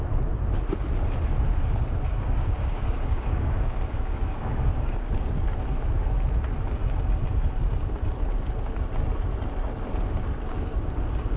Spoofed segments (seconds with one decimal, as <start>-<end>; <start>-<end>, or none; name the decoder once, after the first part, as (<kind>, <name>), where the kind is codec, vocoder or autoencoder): 2.1-5.1 (codec, DAC)